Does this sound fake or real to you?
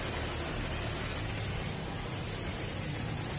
real